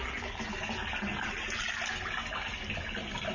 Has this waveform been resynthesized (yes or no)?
no